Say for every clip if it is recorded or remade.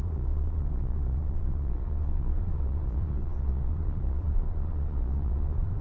remade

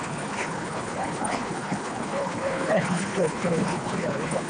remade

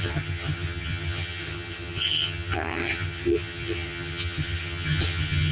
remade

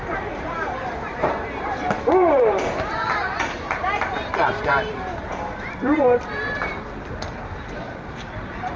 remade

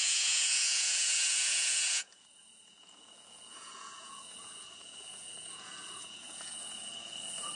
remade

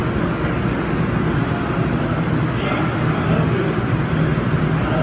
recorded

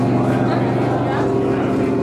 recorded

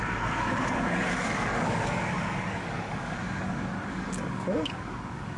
remade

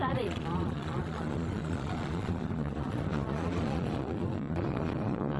remade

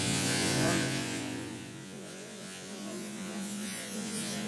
remade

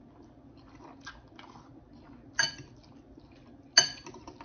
recorded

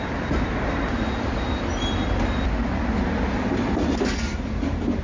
recorded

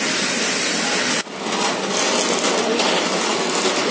recorded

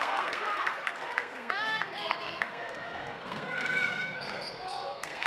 remade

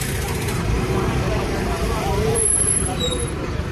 remade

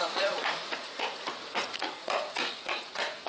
remade